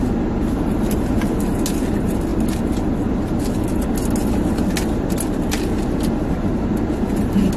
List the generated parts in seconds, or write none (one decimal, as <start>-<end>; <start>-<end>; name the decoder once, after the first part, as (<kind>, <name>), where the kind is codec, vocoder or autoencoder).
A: none